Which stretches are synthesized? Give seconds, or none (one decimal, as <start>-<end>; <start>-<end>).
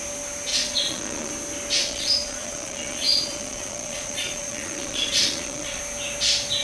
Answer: 0.5-1.3; 1.8-5.8